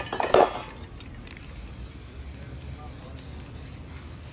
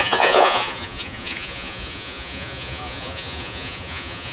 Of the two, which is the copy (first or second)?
second